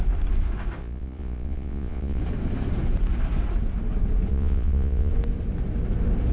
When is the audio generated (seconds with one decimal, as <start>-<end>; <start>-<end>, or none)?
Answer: 0.8-2.2; 4.3-5.1